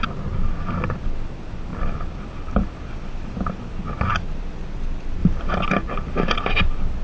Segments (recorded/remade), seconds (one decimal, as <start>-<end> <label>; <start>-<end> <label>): 0.0-7.0 recorded